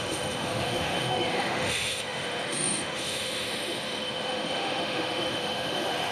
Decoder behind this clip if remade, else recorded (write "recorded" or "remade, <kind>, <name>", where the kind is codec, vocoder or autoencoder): remade, autoencoder, DAC-VAE